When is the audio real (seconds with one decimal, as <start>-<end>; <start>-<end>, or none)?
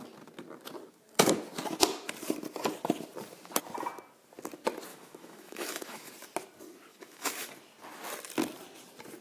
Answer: 0.0-4.9; 6.1-6.9; 7.5-9.2